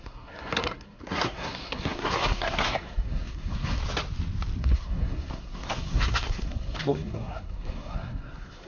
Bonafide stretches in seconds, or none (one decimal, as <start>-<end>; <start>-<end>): 3.8-4.6